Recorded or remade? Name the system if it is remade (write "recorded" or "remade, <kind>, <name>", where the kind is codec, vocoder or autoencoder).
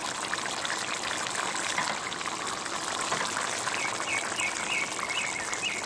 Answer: recorded